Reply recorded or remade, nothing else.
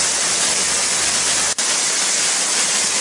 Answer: recorded